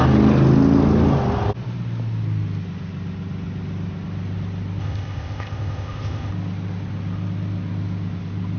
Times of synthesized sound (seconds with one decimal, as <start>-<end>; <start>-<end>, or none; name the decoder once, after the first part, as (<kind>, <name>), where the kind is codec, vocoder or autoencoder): 4.8-6.3 (codec, ZipCodec)

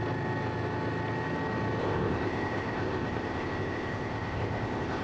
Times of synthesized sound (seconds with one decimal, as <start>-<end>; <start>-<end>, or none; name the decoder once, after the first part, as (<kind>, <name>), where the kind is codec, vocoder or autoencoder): 1.8-5.0 (codec, ZipCodec)

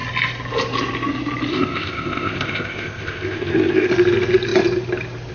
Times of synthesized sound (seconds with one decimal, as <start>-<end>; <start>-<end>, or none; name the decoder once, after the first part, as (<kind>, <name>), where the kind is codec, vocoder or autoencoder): 1.5-3.9 (codec, ZipCodec)